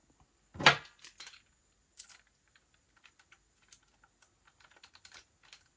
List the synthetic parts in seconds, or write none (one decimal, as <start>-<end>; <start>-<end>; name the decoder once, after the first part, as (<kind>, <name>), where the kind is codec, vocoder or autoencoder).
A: none